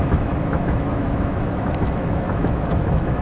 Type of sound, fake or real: fake